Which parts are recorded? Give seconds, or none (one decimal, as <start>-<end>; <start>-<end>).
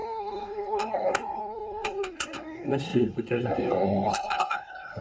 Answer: none